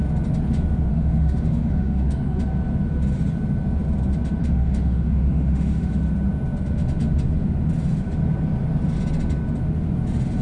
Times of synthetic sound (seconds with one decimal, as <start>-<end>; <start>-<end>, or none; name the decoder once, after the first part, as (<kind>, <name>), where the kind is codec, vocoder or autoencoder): 0.9-2.4 (autoencoder, DAC-VAE); 4.4-5.9